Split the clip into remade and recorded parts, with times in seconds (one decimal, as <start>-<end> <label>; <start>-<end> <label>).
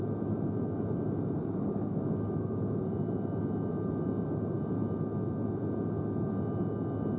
0.0-1.4 recorded; 1.4-2.8 remade; 2.8-7.2 recorded